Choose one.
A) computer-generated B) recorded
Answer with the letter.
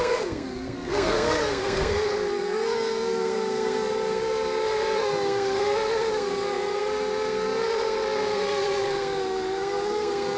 A